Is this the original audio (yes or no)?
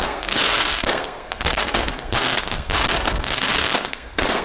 no